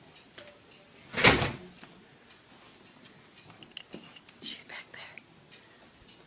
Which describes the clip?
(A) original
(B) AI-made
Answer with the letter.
A